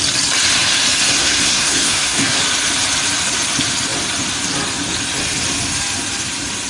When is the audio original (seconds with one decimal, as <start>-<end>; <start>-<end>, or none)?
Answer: 0.0-1.2; 2.4-6.7

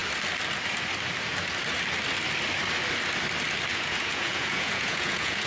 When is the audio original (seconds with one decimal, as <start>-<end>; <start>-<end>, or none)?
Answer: 0.0-3.7

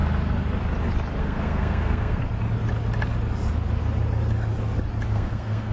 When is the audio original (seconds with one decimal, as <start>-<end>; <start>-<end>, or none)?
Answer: 0.0-1.2; 2.2-5.1

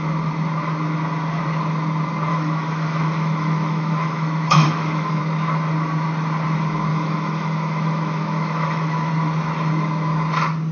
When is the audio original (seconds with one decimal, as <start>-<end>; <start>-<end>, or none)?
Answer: 0.0-2.3; 5.2-6.9; 9.1-10.7

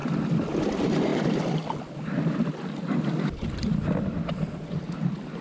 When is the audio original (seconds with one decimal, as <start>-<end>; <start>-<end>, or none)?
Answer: 0.0-5.4

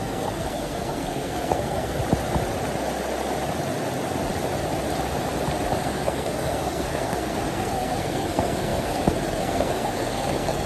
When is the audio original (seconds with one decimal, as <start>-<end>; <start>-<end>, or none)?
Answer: 2.0-5.8

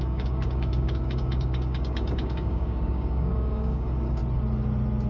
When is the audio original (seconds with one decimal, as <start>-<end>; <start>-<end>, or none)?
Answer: 4.2-5.1

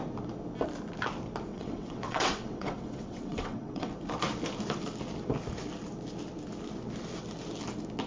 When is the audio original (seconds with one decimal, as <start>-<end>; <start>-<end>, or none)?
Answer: 0.0-1.5; 3.9-8.1